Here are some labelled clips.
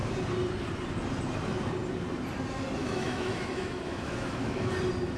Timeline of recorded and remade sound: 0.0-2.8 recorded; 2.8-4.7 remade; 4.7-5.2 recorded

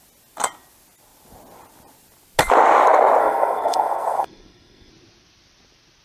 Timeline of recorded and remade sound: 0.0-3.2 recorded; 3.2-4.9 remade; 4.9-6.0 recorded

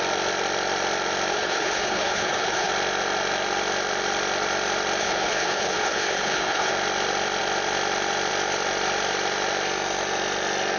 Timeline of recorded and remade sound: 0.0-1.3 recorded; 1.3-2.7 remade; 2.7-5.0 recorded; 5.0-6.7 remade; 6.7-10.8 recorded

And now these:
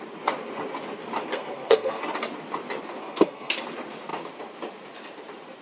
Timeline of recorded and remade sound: 0.0-1.3 recorded; 1.3-2.0 remade; 2.0-3.0 recorded; 3.0-3.5 remade; 3.5-5.6 recorded

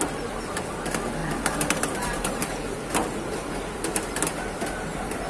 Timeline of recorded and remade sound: 0.0-1.2 recorded; 1.2-2.4 remade; 2.4-5.3 recorded